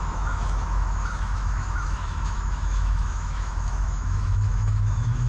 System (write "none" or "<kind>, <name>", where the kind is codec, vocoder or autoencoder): autoencoder, DAC-VAE